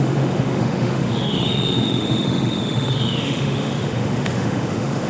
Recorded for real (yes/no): no